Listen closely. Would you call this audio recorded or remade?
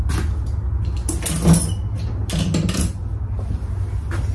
recorded